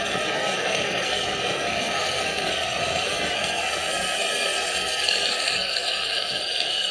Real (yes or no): no